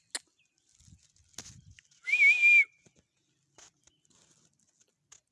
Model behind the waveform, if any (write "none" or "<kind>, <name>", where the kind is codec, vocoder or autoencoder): none